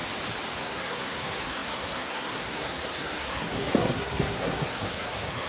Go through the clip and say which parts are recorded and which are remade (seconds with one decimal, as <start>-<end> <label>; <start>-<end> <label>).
0.0-0.6 recorded; 0.6-5.5 remade